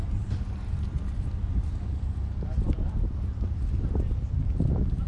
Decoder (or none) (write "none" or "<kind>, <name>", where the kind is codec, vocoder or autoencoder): none